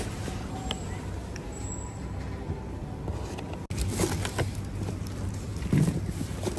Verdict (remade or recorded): recorded